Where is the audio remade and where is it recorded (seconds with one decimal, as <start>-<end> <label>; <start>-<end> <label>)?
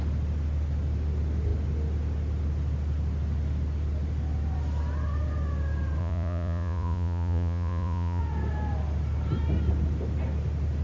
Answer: 0.0-6.0 recorded; 6.0-8.2 remade; 8.2-10.8 recorded